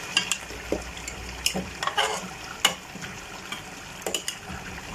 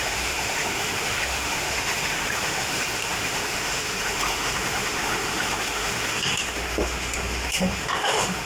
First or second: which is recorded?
first